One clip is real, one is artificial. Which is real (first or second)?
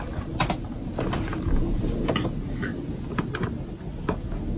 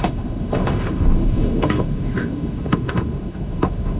first